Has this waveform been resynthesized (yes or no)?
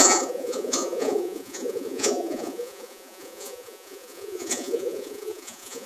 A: yes